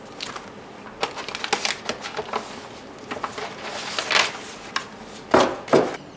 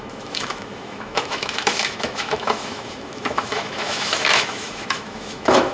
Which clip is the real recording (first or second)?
first